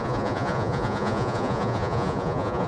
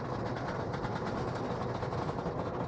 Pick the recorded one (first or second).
second